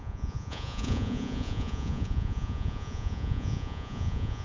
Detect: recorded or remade remade